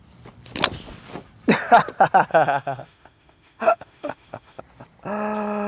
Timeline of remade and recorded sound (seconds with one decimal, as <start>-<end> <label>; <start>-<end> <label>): 0.0-2.3 recorded; 2.3-4.6 remade; 4.6-5.7 recorded